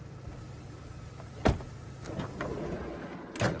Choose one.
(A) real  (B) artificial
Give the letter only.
A